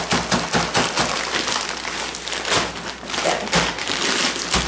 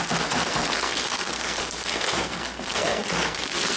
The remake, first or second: second